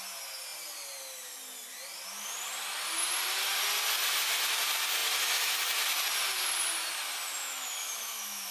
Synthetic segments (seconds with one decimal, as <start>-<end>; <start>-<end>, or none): 7.4-8.5

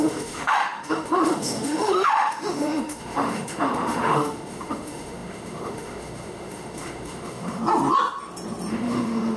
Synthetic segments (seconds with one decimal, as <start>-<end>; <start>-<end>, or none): 0.0-7.6; 8.7-9.4